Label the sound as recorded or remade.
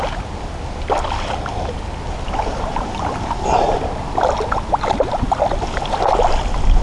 recorded